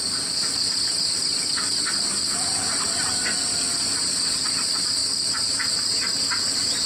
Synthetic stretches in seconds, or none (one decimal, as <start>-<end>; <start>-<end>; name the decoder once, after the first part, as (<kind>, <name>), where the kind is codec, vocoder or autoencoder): 0.0-2.5 (vocoder, BigVGAN v2); 3.8-6.9